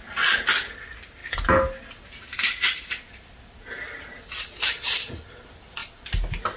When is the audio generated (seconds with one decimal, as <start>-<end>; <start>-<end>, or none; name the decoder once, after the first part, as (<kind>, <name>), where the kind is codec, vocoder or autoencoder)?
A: none

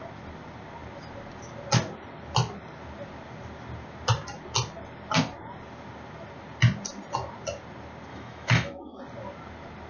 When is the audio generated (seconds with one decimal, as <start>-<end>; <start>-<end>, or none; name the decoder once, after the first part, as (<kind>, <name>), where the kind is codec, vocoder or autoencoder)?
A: 8.1-9.0 (autoencoder, DAC-VAE)

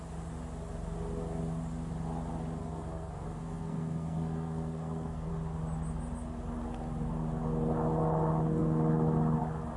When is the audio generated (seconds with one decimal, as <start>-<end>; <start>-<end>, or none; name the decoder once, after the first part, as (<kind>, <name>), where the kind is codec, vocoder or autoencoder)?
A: 2.6-5.3 (codec, SNAC)

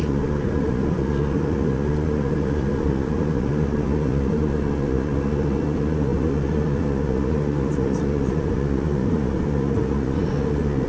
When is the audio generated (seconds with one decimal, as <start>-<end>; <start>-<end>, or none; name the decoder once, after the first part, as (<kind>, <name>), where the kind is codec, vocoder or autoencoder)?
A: 0.0-10.9 (vocoder, Vocos)